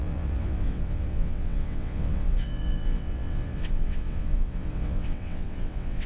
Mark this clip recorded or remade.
remade